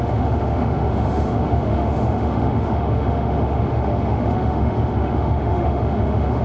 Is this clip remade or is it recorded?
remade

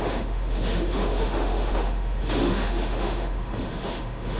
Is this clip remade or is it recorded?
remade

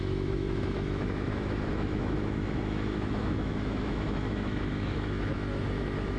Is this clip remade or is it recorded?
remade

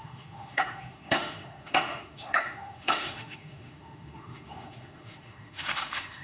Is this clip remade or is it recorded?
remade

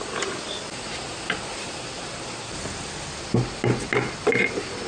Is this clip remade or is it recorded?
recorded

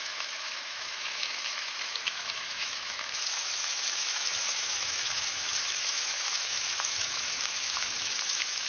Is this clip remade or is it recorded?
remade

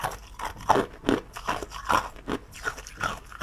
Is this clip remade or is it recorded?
recorded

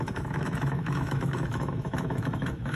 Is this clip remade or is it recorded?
remade